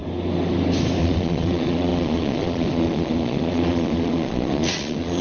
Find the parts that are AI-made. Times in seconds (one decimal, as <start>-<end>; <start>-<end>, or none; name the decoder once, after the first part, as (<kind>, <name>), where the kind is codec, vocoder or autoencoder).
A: 1.0-5.2 (vocoder, Vocos)

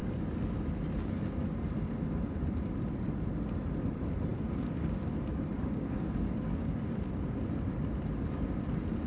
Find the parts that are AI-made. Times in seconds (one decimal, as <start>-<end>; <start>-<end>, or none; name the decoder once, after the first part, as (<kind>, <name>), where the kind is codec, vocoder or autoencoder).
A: 4.3-5.1 (codec, DAC); 5.5-6.9

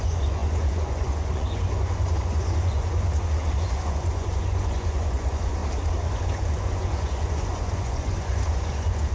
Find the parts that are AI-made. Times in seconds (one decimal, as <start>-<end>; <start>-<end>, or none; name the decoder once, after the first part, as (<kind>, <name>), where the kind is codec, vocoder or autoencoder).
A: 0.0-5.6 (vocoder, Vocos); 6.1-9.1

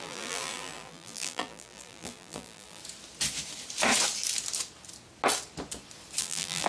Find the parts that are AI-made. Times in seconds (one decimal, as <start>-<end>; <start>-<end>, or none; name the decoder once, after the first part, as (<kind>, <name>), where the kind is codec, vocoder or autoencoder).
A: 0.0-2.8 (vocoder, BigVGAN v2); 6.2-6.7